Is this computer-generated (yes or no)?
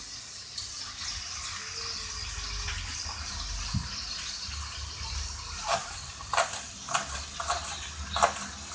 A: no